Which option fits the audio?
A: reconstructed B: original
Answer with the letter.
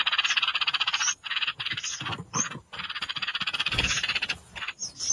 A